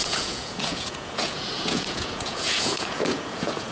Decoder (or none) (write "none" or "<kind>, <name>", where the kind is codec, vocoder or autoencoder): vocoder, Vocos